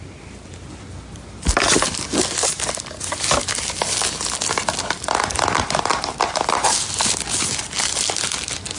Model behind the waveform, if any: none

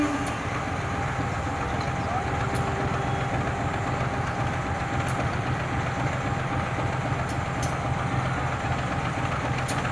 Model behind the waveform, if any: none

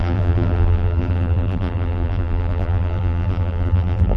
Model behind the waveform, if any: vocoder, BigVGAN v2